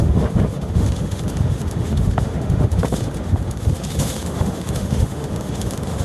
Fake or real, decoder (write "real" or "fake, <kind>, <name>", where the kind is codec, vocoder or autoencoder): fake, autoencoder, DAC-VAE